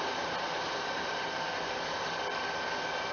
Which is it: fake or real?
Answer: real